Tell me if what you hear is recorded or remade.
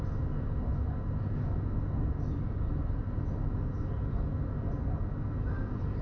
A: recorded